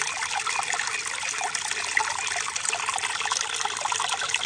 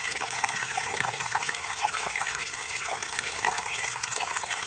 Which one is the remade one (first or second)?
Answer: second